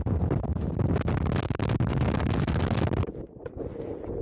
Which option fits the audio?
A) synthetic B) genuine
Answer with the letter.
B